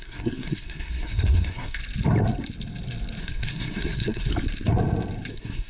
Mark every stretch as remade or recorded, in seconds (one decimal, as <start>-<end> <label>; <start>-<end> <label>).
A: 0.0-1.8 remade; 1.8-3.2 recorded; 3.2-4.3 remade; 4.3-5.3 recorded; 5.3-5.7 remade